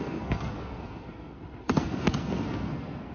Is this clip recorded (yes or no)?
no